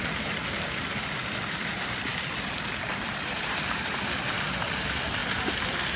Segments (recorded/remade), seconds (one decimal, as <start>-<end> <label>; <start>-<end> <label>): 0.0-2.1 remade; 2.1-2.8 recorded; 2.8-5.2 remade; 5.2-6.0 recorded